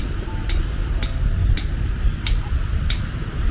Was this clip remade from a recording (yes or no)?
no